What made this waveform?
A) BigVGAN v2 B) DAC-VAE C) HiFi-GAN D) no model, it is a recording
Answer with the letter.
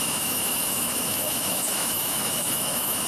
B